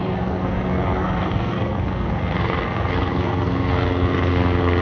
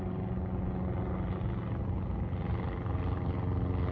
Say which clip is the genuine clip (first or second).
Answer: second